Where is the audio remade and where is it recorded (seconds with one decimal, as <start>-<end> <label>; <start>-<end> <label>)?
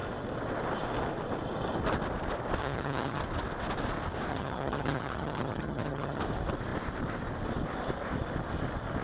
0.0-2.6 recorded; 2.6-3.2 remade; 3.2-4.3 recorded; 4.3-6.2 remade; 6.2-9.0 recorded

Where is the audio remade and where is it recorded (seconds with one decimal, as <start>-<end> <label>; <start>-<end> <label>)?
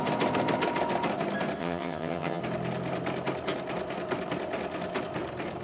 0.0-1.6 recorded; 1.6-2.4 remade; 2.4-5.6 recorded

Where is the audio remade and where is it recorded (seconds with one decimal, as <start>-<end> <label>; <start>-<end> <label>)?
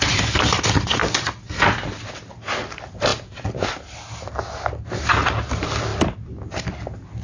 0.0-7.2 recorded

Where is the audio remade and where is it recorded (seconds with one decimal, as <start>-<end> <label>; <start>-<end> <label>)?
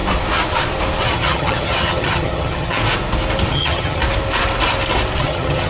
0.0-1.0 recorded; 1.0-2.8 remade; 2.8-3.5 recorded; 3.5-4.0 remade; 4.0-5.2 recorded; 5.2-5.7 remade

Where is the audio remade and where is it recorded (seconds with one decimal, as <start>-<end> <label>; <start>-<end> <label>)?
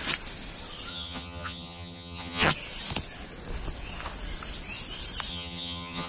0.0-0.9 recorded; 0.9-2.5 remade; 2.5-5.3 recorded; 5.3-6.1 remade